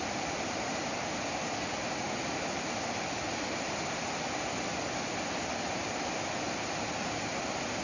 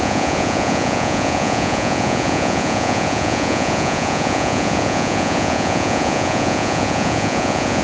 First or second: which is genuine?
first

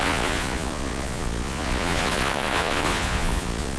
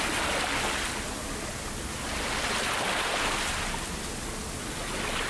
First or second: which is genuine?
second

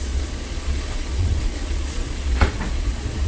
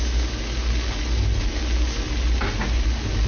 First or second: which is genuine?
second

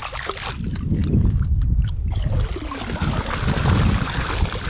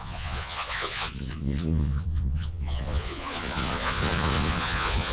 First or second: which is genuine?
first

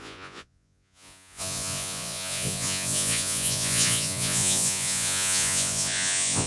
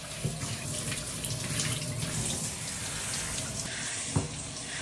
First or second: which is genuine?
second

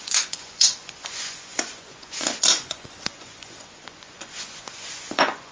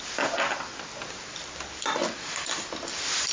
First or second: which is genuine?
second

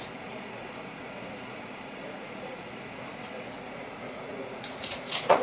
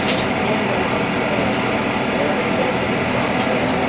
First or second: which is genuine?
second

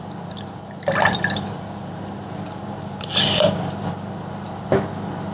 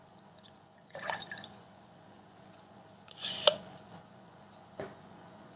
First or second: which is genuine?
first